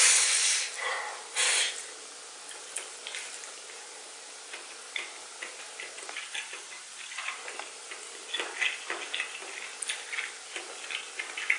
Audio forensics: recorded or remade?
recorded